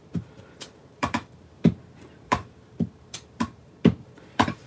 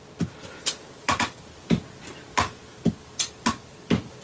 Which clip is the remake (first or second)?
first